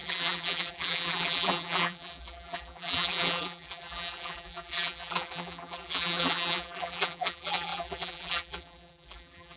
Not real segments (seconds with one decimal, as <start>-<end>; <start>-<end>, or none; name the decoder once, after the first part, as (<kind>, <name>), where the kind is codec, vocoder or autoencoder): 0.0-9.6 (vocoder, BigVGAN v2)